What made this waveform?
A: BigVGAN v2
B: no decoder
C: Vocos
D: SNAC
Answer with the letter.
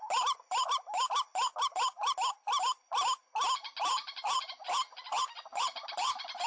B